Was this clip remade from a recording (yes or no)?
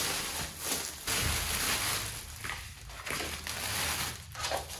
no